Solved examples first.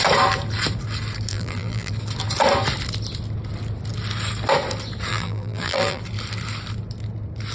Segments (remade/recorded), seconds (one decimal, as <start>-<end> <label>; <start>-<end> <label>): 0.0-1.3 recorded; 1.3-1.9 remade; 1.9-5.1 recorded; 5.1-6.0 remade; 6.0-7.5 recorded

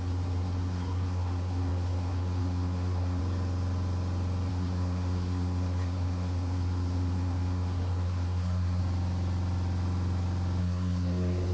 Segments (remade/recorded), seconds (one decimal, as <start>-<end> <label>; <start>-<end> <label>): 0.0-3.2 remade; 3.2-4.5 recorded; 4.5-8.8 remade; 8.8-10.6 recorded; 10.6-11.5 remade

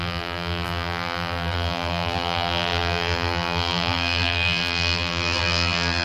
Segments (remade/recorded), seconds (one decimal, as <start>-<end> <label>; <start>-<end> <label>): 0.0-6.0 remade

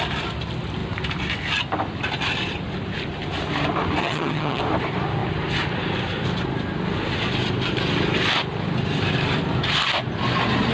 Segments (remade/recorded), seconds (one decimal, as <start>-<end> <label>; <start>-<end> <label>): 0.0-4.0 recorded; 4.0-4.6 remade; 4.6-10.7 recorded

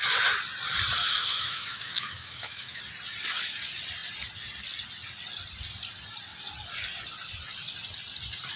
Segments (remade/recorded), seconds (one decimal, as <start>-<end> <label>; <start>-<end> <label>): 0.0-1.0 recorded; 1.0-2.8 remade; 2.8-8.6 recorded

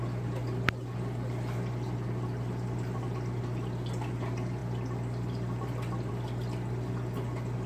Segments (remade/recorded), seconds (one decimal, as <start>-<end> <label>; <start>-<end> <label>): 0.0-4.6 recorded; 4.6-6.1 remade; 6.1-7.7 recorded

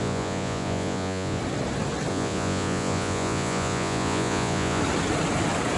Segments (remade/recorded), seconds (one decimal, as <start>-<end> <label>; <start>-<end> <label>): 0.0-1.4 remade; 1.4-2.1 recorded; 2.1-4.8 remade; 4.8-5.8 recorded